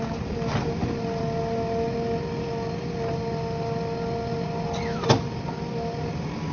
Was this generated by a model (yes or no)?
no